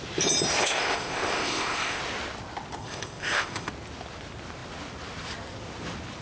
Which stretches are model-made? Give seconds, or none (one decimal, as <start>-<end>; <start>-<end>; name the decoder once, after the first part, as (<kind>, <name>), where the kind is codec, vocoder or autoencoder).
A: 0.6-2.0 (codec, ZipCodec); 2.8-3.7